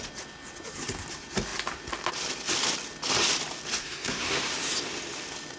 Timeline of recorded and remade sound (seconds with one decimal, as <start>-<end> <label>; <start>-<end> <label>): 0.0-3.8 recorded; 3.8-4.4 remade; 4.4-5.6 recorded